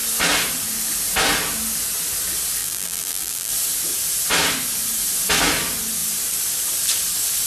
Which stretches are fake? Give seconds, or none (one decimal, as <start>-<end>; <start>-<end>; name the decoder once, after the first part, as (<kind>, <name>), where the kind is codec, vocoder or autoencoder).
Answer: 2.6-3.5 (vocoder, BigVGAN v2)